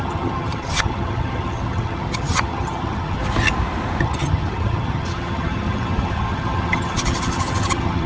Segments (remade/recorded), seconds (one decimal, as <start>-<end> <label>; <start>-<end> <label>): 0.0-3.2 remade; 3.2-4.0 recorded; 4.0-8.1 remade